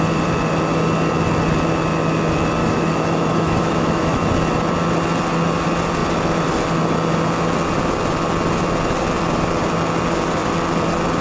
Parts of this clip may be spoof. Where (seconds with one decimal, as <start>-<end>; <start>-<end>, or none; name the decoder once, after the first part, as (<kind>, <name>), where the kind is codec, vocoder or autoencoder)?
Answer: 2.6-4.3 (autoencoder, DAC-VAE)